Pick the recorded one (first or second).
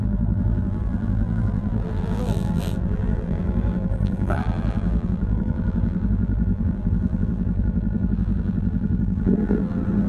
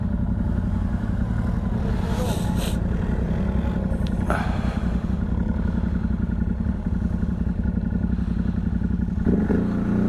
second